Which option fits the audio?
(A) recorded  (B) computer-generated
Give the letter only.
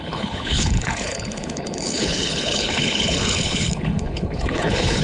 B